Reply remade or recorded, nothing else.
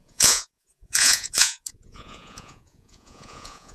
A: remade